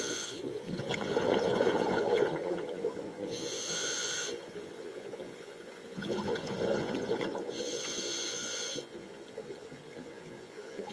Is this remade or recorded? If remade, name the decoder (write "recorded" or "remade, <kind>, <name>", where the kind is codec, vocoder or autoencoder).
remade, vocoder, Vocos